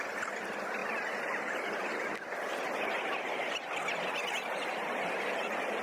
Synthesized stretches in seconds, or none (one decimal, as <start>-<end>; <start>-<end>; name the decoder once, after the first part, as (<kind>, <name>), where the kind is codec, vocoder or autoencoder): none